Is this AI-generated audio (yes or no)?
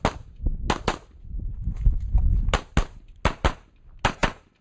no